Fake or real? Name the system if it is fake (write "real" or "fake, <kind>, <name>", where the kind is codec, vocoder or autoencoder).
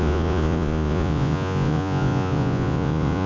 fake, vocoder, Vocos